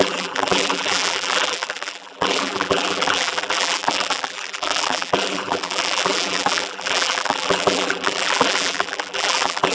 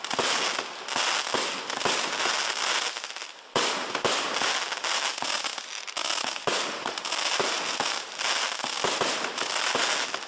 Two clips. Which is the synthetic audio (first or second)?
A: first